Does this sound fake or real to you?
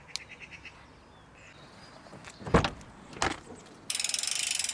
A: real